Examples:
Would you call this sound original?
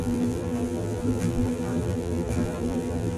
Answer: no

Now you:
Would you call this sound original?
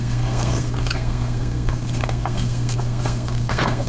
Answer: no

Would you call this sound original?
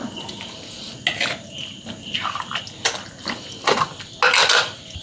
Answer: yes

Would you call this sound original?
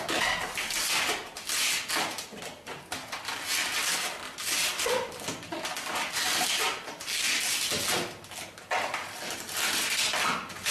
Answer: yes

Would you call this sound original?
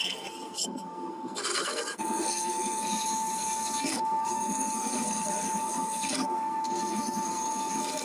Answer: no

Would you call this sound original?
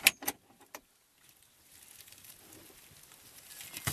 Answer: yes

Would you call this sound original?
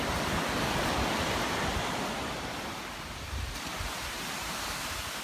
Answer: yes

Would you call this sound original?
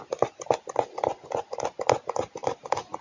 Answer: yes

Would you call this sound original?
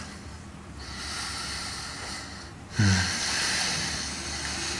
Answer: yes